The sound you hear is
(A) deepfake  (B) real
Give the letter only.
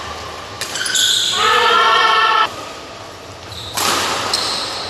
B